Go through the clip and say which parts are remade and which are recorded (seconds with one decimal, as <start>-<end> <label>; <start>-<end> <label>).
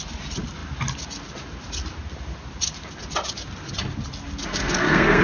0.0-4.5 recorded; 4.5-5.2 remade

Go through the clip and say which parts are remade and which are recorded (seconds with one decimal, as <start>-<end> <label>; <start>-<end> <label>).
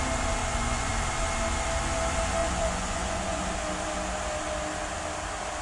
0.0-0.4 recorded; 0.4-0.9 remade; 0.9-2.4 recorded; 2.4-3.4 remade; 3.4-5.6 recorded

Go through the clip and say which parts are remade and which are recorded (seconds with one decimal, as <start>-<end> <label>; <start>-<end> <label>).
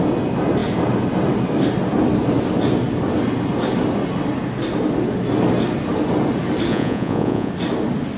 0.0-6.7 recorded; 6.7-7.5 remade; 7.5-8.2 recorded